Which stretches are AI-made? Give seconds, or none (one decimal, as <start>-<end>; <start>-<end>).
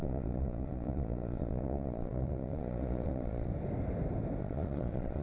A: 0.0-3.5; 4.4-5.2